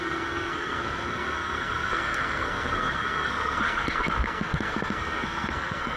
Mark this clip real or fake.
fake